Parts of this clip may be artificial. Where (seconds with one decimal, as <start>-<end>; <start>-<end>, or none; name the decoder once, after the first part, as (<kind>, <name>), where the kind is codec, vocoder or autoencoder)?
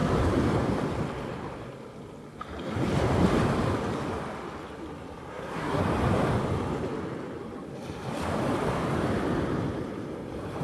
5.3-5.8 (codec, SNAC)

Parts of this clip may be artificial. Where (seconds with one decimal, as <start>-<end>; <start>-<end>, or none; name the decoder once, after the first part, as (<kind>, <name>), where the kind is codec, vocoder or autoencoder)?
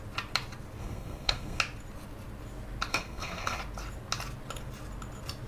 0.8-1.6 (codec, SNAC); 2.9-3.6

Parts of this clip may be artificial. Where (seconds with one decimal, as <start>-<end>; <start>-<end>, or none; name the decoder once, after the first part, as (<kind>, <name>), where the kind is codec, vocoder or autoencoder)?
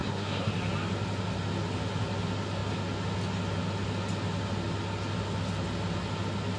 0.0-0.5 (codec, SNAC)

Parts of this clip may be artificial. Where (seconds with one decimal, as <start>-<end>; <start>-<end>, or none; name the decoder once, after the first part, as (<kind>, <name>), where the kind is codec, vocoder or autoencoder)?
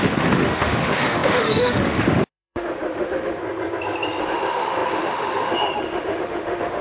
0.0-3.4 (autoencoder, DAC-VAE); 4.2-6.8